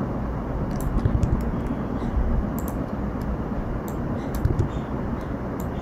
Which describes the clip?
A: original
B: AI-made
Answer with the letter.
A